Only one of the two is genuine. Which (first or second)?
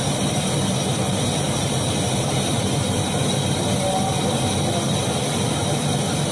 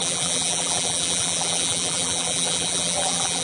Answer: first